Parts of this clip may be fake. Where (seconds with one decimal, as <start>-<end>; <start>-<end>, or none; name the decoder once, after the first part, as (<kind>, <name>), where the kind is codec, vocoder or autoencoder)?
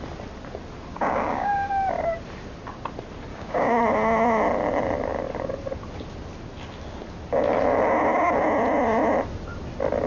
0.9-1.7 (codec, DAC); 3.3-3.8